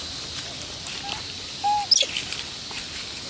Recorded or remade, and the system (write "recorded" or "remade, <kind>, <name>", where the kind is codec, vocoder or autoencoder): recorded